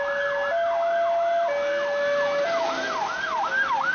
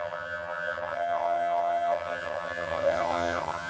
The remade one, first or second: second